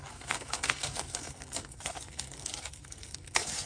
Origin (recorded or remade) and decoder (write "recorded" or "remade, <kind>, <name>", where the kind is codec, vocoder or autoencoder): remade, codec, SNAC